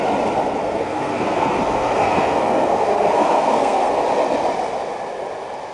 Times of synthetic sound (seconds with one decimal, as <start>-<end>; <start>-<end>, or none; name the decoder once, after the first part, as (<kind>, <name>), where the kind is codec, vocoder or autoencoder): 0.6-4.0 (codec, SNAC)

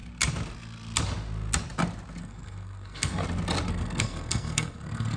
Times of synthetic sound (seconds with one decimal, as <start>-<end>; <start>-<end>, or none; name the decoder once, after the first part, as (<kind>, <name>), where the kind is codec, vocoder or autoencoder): 2.2-3.2 (codec, SNAC); 3.7-5.2

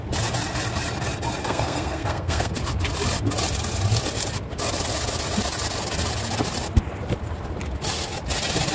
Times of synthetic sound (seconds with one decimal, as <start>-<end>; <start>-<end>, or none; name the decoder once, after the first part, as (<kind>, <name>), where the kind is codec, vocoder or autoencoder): 1.4-2.6 (codec, SNAC)

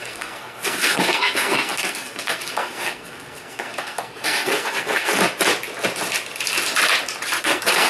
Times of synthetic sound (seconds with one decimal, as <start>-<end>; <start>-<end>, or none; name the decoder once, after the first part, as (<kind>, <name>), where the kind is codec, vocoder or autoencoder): 0.0-5.2 (codec, SNAC); 7.4-7.9

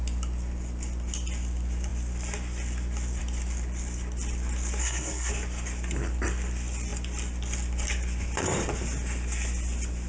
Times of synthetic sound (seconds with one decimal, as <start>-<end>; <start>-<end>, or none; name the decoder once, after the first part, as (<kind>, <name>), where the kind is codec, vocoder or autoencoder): 4.8-5.3 (codec, SNAC)

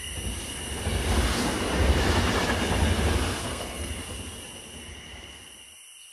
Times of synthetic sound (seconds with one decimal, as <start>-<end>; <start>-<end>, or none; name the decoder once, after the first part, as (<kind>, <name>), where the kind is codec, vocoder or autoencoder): 3.4-3.9 (codec, SNAC)